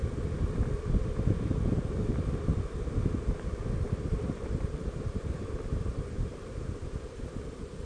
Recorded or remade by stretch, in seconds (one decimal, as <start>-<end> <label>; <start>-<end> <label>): 0.0-3.8 recorded; 3.8-7.8 remade